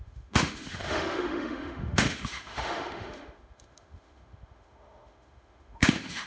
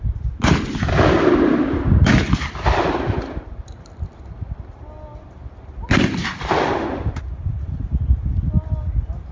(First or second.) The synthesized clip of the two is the first